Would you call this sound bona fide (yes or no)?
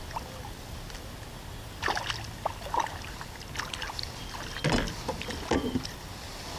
yes